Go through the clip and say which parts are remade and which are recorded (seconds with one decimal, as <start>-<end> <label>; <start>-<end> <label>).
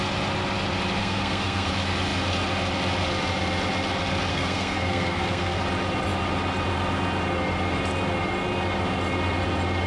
0.0-1.0 recorded; 1.0-1.7 remade; 1.7-4.3 recorded; 4.3-5.6 remade; 5.6-9.9 recorded